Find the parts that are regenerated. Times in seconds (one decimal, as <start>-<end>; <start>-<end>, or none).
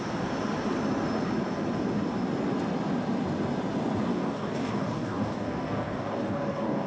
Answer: 4.1-6.9